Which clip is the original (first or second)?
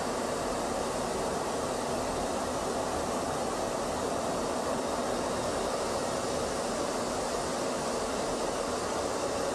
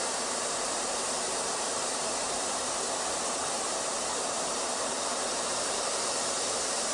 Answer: first